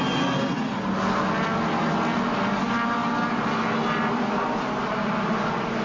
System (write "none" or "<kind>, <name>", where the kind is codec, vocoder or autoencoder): none